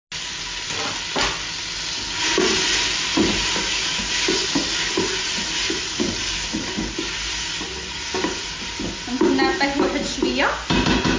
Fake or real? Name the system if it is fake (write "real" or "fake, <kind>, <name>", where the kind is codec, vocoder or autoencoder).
real